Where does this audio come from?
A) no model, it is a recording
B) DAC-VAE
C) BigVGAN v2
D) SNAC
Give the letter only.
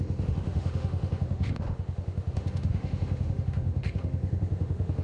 B